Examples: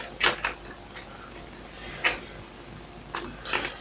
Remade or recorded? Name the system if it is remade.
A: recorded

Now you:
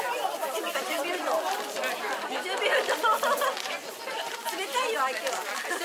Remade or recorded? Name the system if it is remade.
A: recorded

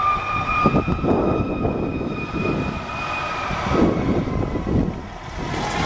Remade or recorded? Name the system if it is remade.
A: recorded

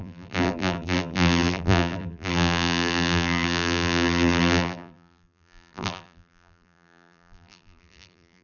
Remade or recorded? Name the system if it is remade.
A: remade, vocoder, BigVGAN v2